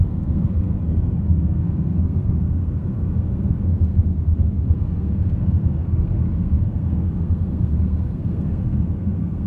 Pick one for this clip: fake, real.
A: fake